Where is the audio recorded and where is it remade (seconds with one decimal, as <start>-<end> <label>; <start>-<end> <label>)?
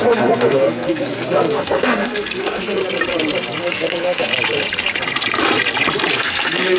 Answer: 0.0-2.8 remade; 2.8-3.6 recorded; 3.6-4.3 remade; 4.3-6.1 recorded; 6.1-6.8 remade